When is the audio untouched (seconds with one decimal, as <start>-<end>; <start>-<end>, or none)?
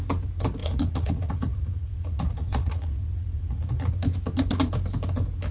0.0-0.6; 3.9-5.5